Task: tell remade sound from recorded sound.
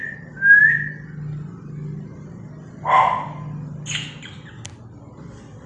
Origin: recorded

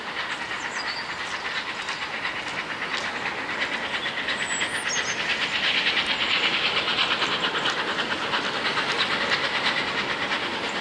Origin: recorded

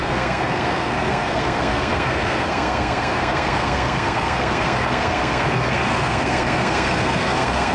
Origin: remade